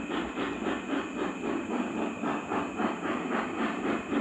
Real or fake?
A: real